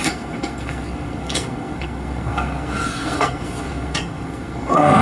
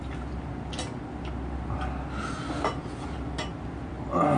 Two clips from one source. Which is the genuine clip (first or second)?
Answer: second